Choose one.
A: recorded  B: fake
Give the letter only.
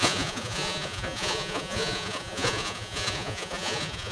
B